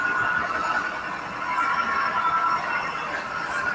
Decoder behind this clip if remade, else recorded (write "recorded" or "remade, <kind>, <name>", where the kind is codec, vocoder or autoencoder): recorded